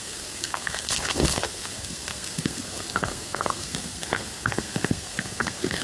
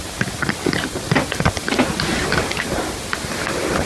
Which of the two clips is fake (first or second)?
first